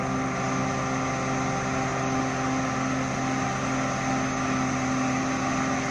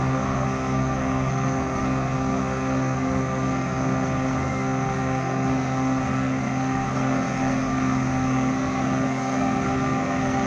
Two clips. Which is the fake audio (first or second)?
second